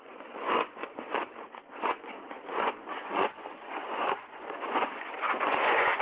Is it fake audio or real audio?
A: fake